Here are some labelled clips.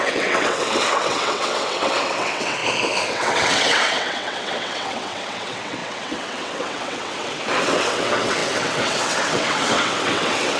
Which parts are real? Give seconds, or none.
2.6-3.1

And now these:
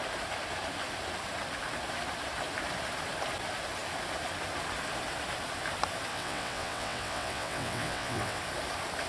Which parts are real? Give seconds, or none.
0.0-6.1; 8.4-9.1

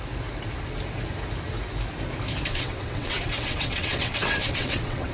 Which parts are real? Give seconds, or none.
0.0-2.5